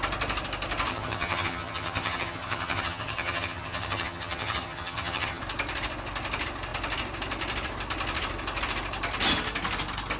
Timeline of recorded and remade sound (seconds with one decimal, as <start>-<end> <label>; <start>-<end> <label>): 0.0-0.9 recorded; 0.9-5.4 remade; 5.4-10.2 recorded